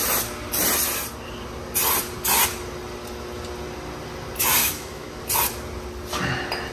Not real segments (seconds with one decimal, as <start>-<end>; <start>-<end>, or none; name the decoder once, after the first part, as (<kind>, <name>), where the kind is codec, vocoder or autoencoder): 4.6-5.2 (autoencoder, DAC-VAE)